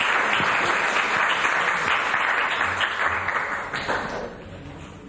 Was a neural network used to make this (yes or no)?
no